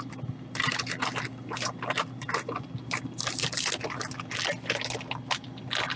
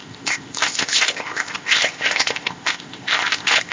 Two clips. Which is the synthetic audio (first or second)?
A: second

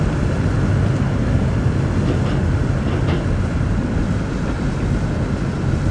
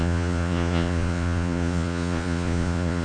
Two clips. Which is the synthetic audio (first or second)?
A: second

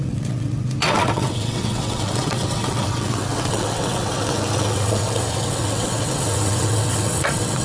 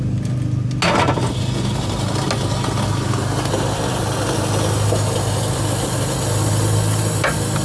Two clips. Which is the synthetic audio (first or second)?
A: first